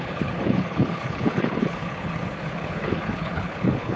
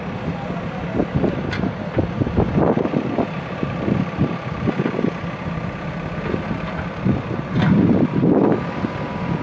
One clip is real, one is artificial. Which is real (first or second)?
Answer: second